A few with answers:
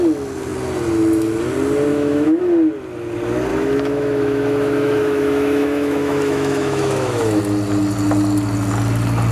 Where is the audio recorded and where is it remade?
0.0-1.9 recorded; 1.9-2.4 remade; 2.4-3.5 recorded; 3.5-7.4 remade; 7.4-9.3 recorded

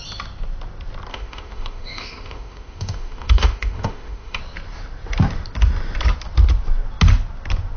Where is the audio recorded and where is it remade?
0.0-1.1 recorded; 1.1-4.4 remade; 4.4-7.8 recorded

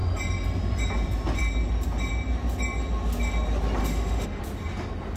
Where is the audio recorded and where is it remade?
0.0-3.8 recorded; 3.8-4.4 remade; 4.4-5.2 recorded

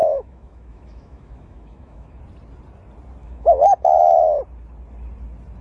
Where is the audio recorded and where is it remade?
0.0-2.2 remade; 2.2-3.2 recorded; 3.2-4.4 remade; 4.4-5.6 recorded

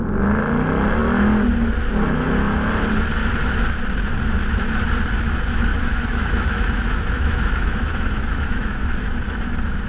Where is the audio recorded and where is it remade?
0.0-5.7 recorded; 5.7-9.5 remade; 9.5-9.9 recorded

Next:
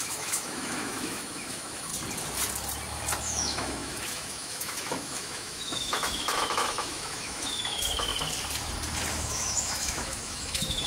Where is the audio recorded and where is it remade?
0.0-1.9 remade; 1.9-3.2 recorded; 3.2-8.1 remade; 8.1-9.1 recorded; 9.1-10.9 remade

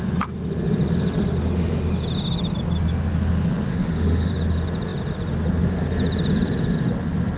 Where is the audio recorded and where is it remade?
0.0-3.7 recorded; 3.7-4.3 remade; 4.3-7.4 recorded

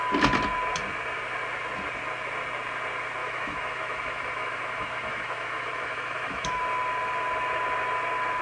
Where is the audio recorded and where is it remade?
0.0-3.2 recorded; 3.2-6.6 remade; 6.6-8.4 recorded